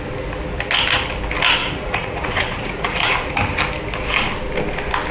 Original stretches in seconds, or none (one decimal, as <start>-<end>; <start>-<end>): 0.0-1.6; 3.3-5.1